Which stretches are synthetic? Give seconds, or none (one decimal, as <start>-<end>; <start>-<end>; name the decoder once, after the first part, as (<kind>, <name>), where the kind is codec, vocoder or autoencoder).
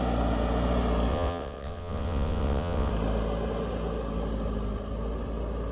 1.1-2.9 (vocoder, WaveNeXt)